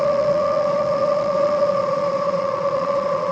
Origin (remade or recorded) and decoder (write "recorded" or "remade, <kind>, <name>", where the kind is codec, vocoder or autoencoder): remade, vocoder, Vocos